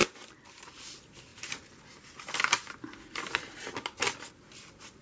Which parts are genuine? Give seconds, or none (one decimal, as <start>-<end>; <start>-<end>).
0.0-5.0